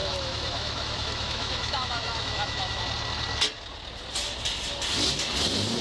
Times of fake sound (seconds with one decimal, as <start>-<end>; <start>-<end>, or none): 0.0-2.8